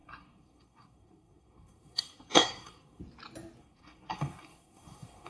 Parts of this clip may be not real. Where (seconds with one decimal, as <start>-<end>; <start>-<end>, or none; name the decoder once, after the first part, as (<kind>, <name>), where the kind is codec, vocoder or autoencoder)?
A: 0.0-3.0 (codec, SNAC); 3.6-5.3